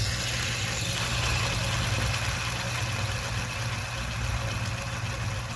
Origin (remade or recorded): recorded